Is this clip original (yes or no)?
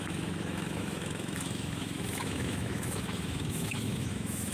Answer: no